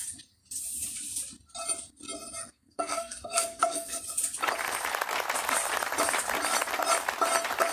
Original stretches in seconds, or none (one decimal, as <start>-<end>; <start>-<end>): 0.0-2.4; 4.0-7.7